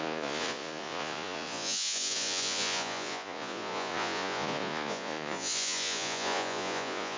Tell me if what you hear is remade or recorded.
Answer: remade